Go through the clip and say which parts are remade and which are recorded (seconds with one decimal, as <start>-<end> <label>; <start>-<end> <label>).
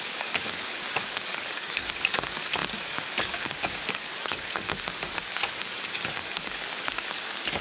0.0-7.6 remade